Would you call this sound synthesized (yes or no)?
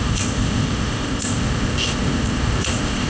yes